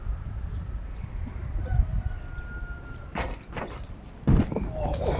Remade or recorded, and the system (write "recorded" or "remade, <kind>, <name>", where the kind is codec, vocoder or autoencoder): recorded